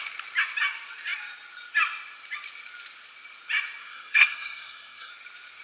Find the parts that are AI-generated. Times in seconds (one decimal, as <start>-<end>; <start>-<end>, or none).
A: 3.8-5.1